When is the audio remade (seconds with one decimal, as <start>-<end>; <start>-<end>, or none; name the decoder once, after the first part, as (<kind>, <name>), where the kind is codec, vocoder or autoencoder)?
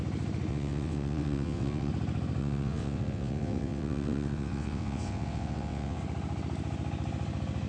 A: 0.5-1.9 (vocoder, WaveNeXt); 2.4-6.0